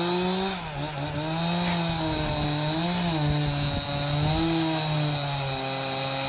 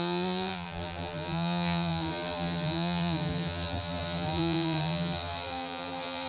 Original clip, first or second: first